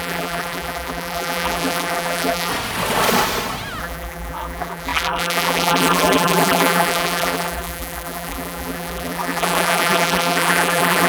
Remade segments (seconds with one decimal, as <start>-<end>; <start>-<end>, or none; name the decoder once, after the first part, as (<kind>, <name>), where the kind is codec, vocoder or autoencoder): 0.0-2.5 (vocoder, BigVGAN v2); 3.8-11.1